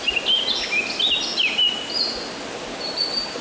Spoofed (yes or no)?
no